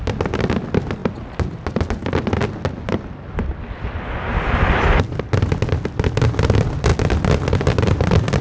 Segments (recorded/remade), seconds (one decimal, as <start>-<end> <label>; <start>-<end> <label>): 0.0-8.4 recorded